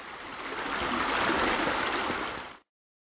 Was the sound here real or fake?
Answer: real